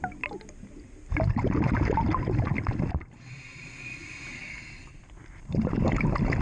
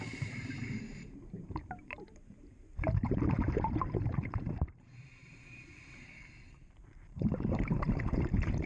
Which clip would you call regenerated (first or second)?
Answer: second